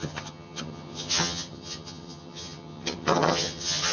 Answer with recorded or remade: remade